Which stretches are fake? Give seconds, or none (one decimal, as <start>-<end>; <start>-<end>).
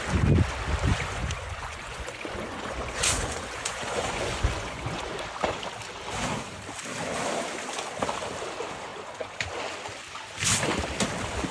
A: 0.9-5.1